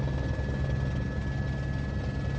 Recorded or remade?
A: recorded